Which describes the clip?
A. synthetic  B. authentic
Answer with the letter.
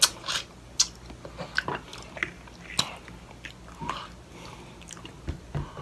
B